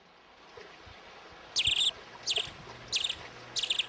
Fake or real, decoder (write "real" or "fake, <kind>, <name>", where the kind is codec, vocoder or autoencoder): real